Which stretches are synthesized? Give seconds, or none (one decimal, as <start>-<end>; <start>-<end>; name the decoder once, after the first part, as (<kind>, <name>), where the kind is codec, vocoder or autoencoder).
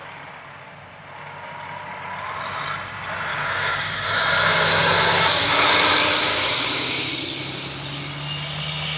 3.3-4.3 (codec, DAC); 4.7-5.5; 6.3-7.1